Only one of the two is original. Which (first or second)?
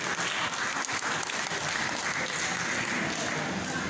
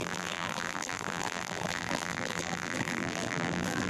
first